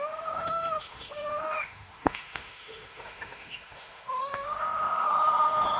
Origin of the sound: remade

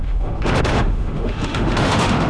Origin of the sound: remade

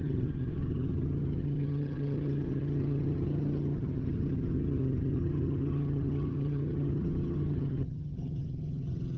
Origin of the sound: remade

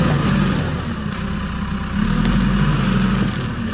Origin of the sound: recorded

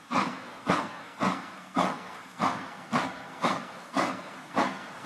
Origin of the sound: remade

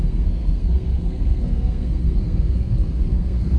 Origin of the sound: remade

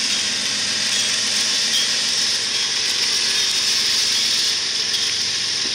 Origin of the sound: recorded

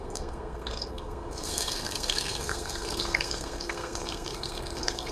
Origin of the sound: remade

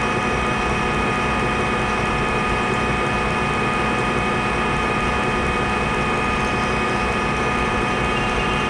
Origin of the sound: remade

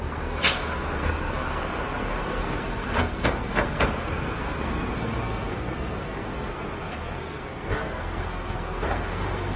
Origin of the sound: remade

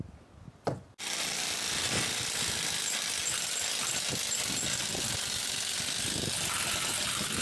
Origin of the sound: recorded